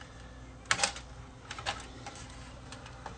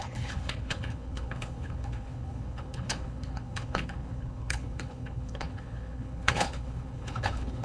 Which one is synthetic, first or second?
second